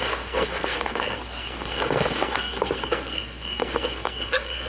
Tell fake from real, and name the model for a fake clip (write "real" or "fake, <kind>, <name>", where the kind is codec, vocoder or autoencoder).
fake, codec, SNAC